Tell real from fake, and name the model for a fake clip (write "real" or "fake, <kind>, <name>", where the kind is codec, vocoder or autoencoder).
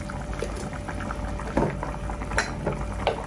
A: real